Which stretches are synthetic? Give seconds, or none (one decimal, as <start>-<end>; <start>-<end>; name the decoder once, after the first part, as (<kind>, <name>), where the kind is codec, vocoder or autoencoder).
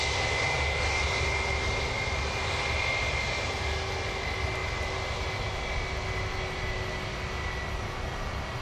none